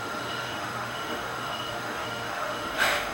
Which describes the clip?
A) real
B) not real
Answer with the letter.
B